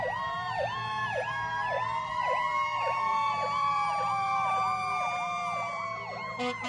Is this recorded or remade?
remade